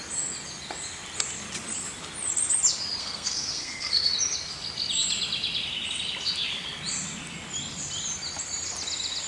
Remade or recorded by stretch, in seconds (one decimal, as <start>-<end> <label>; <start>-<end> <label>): 0.0-3.0 recorded; 3.0-4.1 remade; 4.1-9.3 recorded